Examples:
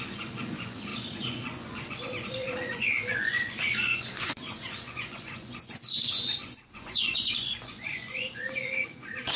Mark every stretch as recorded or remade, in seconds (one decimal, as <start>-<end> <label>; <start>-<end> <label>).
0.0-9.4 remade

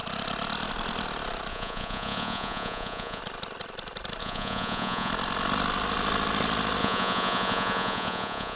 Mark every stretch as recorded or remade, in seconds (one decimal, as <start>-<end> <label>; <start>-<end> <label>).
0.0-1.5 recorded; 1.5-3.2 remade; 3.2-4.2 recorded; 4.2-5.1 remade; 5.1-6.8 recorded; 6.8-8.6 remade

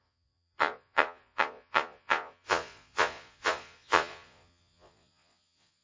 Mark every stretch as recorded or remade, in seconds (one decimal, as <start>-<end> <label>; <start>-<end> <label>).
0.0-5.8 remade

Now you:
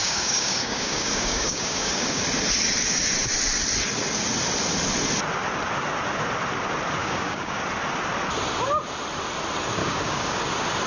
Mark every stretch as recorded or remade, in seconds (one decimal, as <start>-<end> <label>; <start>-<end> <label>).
0.0-2.2 remade; 2.2-7.0 recorded; 7.0-7.6 remade; 7.6-9.8 recorded; 9.8-10.4 remade; 10.4-10.9 recorded

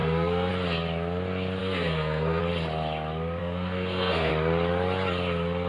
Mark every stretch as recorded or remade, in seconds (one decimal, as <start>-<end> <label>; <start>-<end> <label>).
0.0-0.5 remade; 0.5-1.6 recorded; 1.6-2.4 remade; 2.4-3.4 recorded; 3.4-4.3 remade; 4.3-5.7 recorded

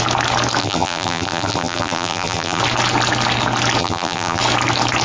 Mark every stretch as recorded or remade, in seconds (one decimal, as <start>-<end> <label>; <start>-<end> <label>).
0.0-0.6 recorded; 0.6-2.6 remade; 2.6-3.8 recorded; 3.8-4.4 remade; 4.4-5.0 recorded